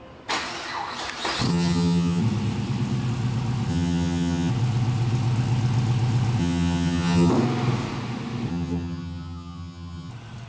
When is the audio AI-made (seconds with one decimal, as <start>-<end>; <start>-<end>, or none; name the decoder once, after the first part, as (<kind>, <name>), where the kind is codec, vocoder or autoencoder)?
1.5-2.2 (vocoder, HiFi-GAN); 3.7-4.5; 6.4-7.3; 8.5-10.1

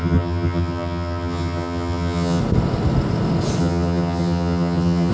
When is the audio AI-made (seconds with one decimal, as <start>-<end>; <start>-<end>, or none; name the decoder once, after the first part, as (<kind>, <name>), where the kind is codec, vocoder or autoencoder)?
0.0-2.4 (vocoder, HiFi-GAN); 3.6-5.1

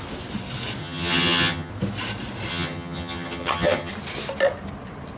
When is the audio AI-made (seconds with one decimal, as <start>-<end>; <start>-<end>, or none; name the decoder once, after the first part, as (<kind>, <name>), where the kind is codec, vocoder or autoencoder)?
0.8-1.7 (vocoder, HiFi-GAN); 2.5-3.9